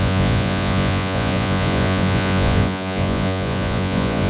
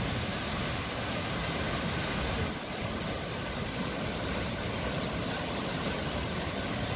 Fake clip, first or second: first